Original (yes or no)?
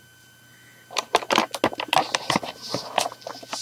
yes